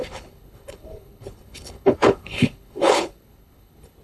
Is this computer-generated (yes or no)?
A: yes